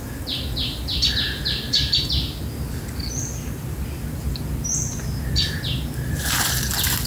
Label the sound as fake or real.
real